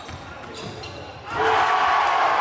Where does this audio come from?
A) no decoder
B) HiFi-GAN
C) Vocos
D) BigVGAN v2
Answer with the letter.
A